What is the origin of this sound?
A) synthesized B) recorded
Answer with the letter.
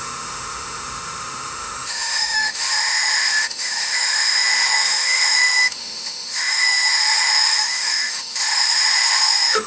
A